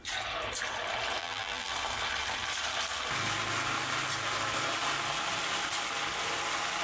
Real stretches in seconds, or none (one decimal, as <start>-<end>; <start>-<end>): 0.0-1.2; 1.7-6.8